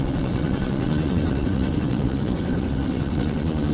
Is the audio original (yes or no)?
no